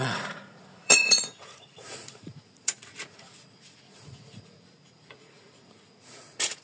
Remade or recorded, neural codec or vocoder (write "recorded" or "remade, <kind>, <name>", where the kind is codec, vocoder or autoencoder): remade, vocoder, Vocos